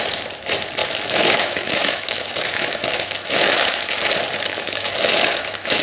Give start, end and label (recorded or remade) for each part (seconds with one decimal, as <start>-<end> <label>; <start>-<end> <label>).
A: 0.0-0.8 recorded; 0.8-4.0 remade; 4.0-4.5 recorded; 4.5-5.8 remade